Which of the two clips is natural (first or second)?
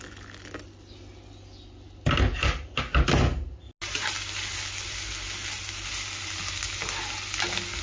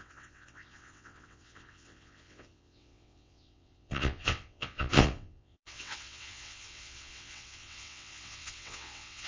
first